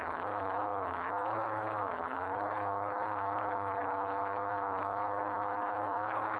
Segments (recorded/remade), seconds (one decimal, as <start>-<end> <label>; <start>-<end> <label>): 0.0-6.4 remade